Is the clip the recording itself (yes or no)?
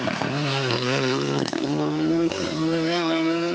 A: no